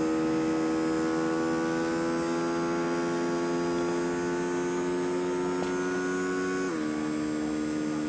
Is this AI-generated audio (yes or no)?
no